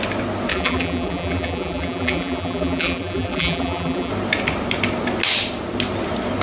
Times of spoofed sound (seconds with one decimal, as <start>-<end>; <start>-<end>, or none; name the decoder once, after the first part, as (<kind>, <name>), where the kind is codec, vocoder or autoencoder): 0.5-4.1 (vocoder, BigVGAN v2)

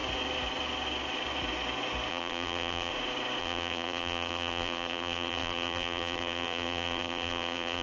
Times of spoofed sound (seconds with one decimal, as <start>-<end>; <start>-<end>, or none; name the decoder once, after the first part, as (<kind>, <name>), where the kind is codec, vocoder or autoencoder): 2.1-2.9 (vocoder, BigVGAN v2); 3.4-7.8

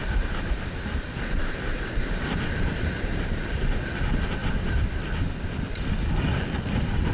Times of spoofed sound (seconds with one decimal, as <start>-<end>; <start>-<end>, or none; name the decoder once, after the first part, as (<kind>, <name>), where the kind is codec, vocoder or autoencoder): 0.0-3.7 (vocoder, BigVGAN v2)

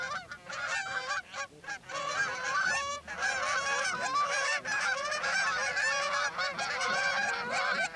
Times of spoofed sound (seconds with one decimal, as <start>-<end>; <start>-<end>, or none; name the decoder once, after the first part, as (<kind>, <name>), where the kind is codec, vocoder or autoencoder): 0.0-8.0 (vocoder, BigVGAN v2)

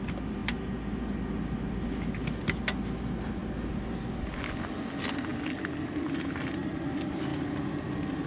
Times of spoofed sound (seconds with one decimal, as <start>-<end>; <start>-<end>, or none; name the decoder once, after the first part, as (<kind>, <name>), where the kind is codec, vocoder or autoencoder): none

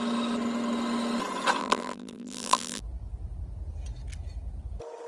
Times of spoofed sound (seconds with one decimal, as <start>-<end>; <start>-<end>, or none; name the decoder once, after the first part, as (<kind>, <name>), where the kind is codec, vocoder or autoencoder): 1.6-2.8 (vocoder, BigVGAN v2)